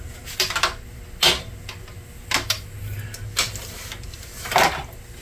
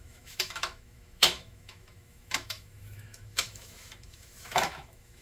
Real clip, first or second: first